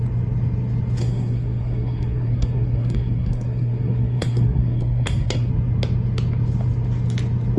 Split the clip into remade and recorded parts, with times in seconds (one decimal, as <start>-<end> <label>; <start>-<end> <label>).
0.0-1.0 recorded; 1.0-5.5 remade; 5.5-7.6 recorded

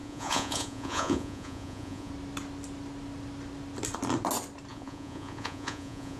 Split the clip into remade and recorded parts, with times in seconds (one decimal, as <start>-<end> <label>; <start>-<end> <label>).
0.0-2.1 remade; 2.1-4.7 recorded; 4.7-6.2 remade

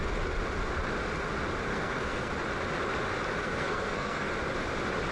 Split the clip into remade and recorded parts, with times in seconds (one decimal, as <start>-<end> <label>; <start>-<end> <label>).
0.0-1.7 recorded; 1.7-2.3 remade; 2.3-3.4 recorded; 3.4-4.3 remade; 4.3-5.1 recorded

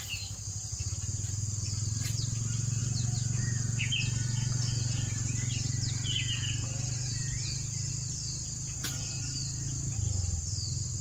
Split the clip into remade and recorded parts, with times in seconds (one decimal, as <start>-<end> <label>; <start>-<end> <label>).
0.0-2.8 recorded; 2.8-7.9 remade; 7.9-11.0 recorded

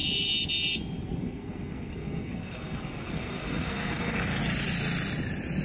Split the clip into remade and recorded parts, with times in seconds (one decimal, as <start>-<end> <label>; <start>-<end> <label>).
0.0-1.0 recorded; 1.0-4.4 remade; 4.4-5.6 recorded

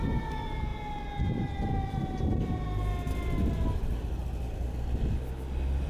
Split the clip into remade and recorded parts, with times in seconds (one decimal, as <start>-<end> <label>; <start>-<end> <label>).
0.0-5.9 recorded

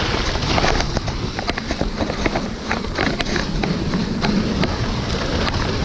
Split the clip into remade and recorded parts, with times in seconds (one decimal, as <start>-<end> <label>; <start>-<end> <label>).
0.0-5.8 recorded

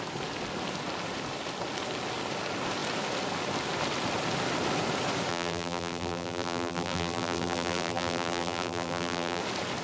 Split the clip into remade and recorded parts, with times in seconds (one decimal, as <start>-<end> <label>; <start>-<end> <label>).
0.0-5.3 recorded; 5.3-9.4 remade; 9.4-9.8 recorded